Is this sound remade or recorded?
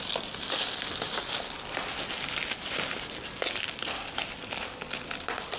recorded